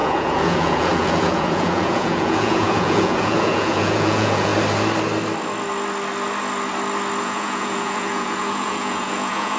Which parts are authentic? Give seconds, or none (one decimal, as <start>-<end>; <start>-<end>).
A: 4.5-7.2